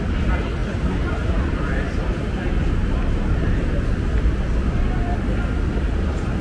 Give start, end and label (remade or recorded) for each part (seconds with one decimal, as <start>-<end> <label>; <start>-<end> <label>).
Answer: 0.0-6.4 recorded